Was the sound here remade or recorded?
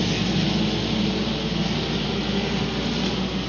recorded